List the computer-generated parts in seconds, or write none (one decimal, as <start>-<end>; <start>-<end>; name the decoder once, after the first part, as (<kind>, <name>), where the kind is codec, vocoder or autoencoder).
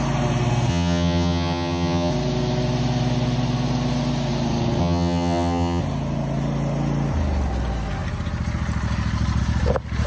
0.7-2.1 (vocoder, HiFi-GAN); 4.8-5.8